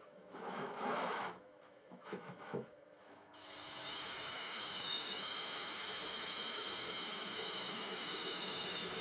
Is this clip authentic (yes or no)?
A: no